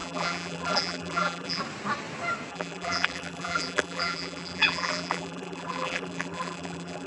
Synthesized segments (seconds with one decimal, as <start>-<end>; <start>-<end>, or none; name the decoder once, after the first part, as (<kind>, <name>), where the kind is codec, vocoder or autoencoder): 0.0-1.6 (vocoder, BigVGAN v2); 2.5-7.1